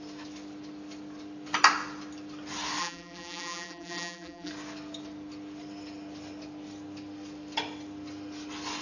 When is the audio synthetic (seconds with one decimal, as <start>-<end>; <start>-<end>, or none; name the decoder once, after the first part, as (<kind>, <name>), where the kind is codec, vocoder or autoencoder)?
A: 2.8-4.5 (vocoder, BigVGAN v2)